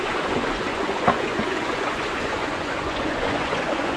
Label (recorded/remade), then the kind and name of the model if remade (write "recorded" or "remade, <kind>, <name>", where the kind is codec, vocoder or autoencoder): remade, vocoder, Vocos